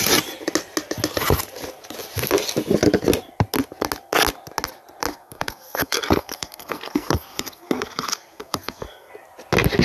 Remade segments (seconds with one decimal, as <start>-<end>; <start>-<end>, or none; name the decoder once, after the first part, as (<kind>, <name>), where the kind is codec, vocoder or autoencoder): 5.1-9.1 (codec, SNAC)